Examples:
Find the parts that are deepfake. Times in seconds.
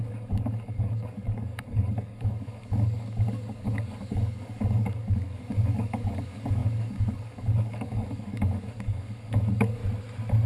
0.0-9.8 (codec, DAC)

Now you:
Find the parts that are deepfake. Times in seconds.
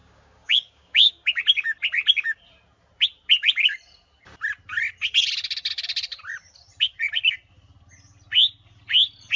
0.0-1.4 (codec, DAC)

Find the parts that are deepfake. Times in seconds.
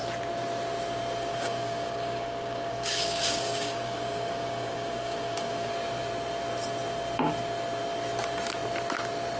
1.3-5.7 (codec, DAC)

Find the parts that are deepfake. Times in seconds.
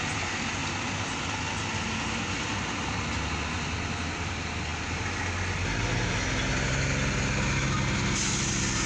none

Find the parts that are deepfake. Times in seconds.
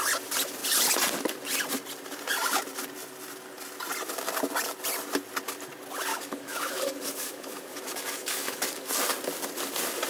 6.1-8.9 (codec, DAC)